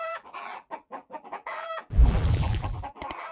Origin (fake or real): fake